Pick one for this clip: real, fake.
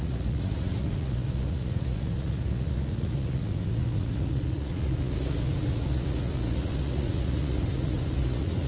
fake